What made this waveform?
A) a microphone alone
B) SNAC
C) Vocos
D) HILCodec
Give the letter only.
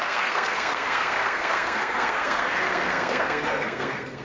B